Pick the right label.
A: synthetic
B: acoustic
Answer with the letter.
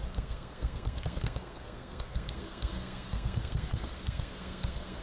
A